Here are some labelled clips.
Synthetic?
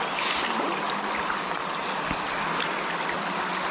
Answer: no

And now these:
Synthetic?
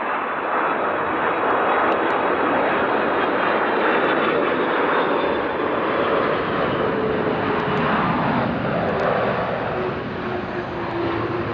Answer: no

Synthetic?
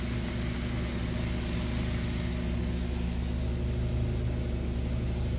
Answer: no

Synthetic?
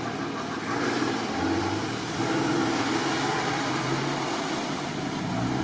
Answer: yes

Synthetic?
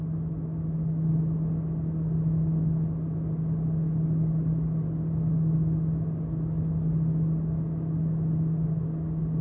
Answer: no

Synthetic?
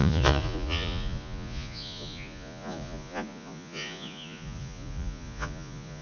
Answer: yes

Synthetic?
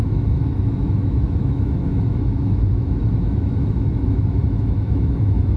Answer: yes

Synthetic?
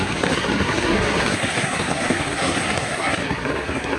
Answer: yes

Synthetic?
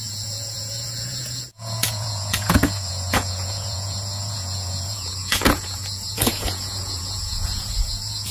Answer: yes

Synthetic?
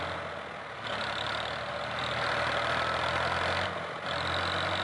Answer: no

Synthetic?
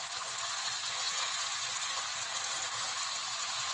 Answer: yes